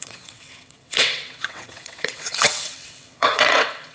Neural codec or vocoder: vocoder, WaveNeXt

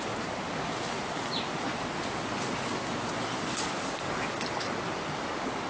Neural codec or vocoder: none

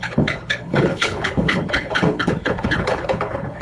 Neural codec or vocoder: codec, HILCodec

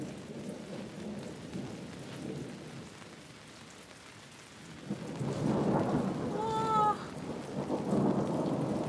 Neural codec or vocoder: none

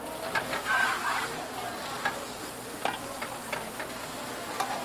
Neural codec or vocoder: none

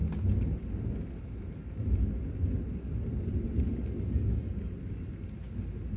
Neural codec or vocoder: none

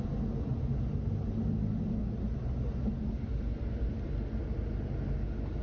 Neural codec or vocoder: none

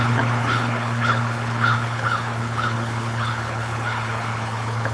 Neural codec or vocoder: codec, HILCodec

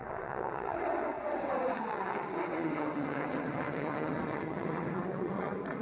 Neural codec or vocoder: vocoder, WaveNeXt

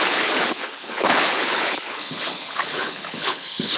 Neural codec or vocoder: codec, HILCodec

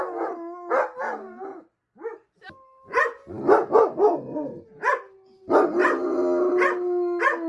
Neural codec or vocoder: none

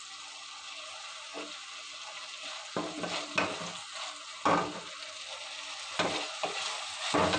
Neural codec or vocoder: none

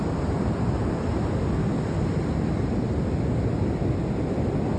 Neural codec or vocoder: none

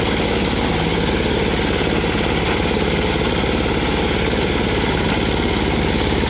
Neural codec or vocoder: none